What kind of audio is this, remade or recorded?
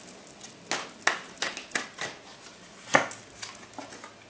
recorded